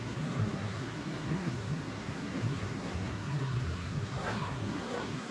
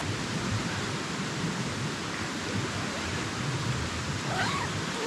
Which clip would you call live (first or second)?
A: second